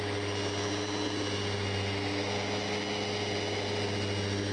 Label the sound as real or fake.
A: real